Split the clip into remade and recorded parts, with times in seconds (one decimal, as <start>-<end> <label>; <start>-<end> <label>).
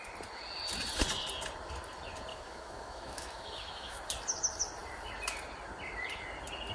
0.0-2.3 recorded; 2.3-4.0 remade; 4.0-6.7 recorded